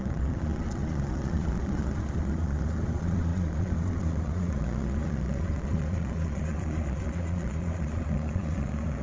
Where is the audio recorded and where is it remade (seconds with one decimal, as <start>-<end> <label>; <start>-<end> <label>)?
0.0-9.0 remade